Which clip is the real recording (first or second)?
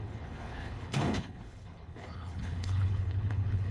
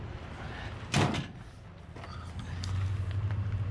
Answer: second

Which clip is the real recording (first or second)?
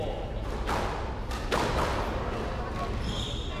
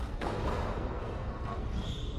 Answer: first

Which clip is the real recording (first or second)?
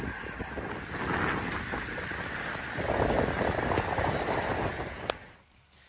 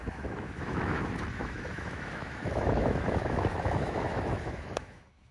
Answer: first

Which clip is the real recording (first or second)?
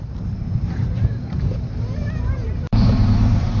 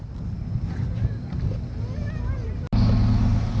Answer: second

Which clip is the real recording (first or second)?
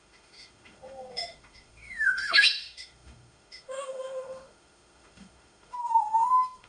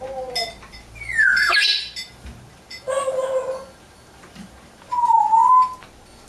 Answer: second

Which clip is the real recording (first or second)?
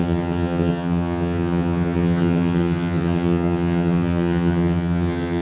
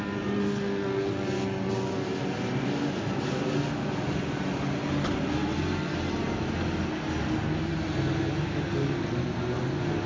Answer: second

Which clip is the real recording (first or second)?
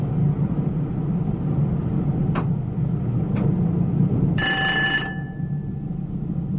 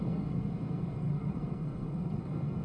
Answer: first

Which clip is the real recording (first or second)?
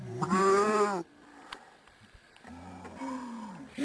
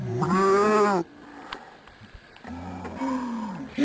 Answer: second